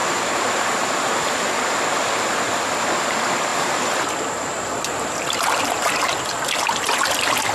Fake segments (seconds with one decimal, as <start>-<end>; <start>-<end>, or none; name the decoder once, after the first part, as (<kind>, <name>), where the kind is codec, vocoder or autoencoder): 0.0-1.6 (vocoder, BigVGAN v2); 3.5-6.1